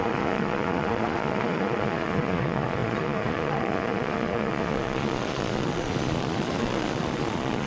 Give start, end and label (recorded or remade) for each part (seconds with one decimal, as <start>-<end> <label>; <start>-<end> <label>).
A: 0.0-7.7 remade